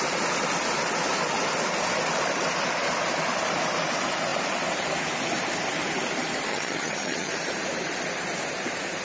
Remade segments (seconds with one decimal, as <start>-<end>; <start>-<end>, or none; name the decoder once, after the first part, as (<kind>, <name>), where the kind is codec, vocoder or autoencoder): 6.5-7.3 (vocoder, HiFi-GAN)